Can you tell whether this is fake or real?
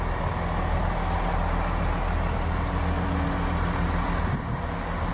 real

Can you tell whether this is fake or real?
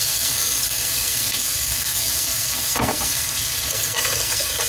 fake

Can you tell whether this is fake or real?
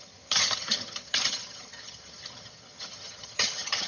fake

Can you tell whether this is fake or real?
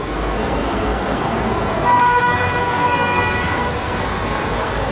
fake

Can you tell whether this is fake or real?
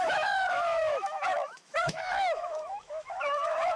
fake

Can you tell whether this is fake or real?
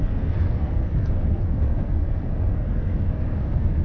fake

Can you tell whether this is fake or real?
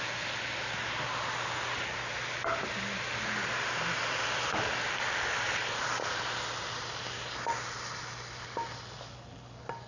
real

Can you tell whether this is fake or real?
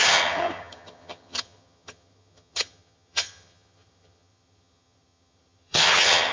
fake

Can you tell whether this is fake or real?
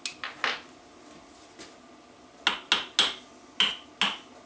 real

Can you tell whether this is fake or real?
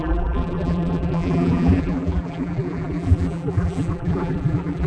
fake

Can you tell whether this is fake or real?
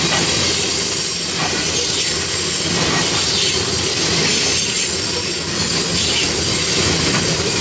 real